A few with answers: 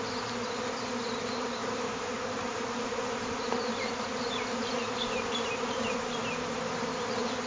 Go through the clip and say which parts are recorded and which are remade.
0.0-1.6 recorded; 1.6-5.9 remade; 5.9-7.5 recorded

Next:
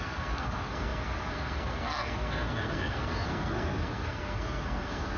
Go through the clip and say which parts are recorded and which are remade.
0.0-5.2 remade

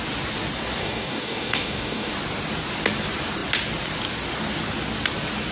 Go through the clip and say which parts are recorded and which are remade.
0.0-0.8 recorded; 0.8-2.1 remade; 2.1-5.5 recorded

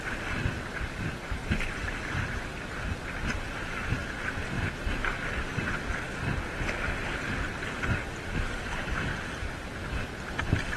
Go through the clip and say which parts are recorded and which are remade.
0.0-10.8 recorded

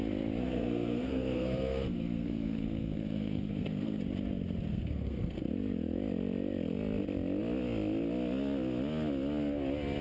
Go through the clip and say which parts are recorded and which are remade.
0.0-0.4 recorded; 0.4-4.0 remade; 4.0-4.7 recorded; 4.7-5.4 remade; 5.4-10.0 recorded

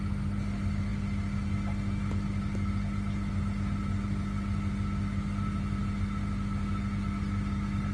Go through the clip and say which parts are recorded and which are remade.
0.0-7.9 recorded